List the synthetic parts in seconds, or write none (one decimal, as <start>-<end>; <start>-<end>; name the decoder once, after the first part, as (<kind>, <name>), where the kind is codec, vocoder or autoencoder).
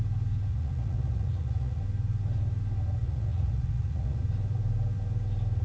0.5-1.8 (vocoder, Vocos); 3.0-4.2